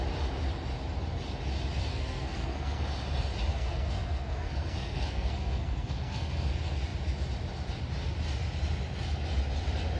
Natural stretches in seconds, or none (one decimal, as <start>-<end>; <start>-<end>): 0.0-1.9; 2.8-3.5; 6.5-10.0